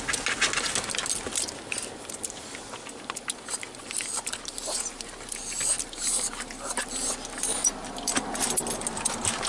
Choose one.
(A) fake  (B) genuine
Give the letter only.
B